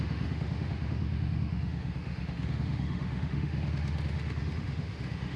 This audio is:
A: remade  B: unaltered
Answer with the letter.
A